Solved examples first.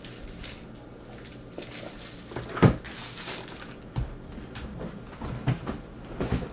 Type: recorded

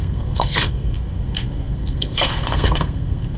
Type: remade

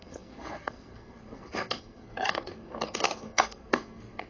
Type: remade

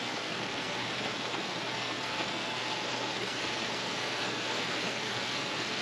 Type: remade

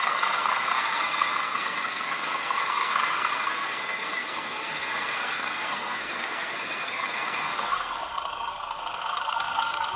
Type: remade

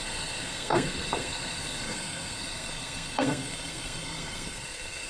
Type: remade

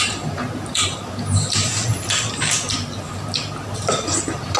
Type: recorded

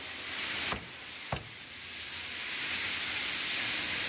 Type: recorded